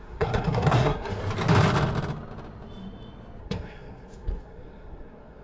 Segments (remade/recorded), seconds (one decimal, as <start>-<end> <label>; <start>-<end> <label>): 0.0-1.2 remade; 1.2-3.4 recorded; 3.4-5.4 remade